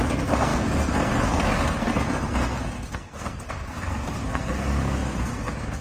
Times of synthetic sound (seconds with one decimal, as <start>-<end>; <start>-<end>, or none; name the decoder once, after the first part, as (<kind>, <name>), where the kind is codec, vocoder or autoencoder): 0.0-5.8 (codec, SNAC)